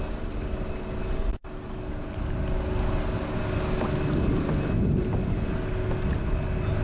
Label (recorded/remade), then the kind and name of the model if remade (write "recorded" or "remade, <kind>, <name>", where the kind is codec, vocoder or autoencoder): recorded